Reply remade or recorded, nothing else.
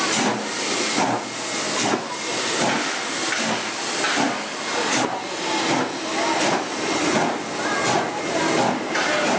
recorded